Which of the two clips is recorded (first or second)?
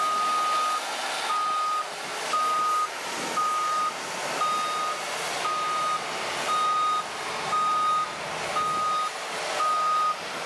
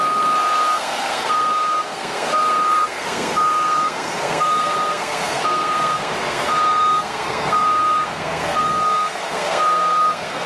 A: first